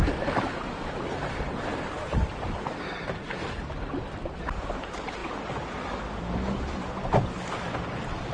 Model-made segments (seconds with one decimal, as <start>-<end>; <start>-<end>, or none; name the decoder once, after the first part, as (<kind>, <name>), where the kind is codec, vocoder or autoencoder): none